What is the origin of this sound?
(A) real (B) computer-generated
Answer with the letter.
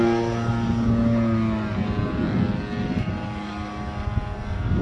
A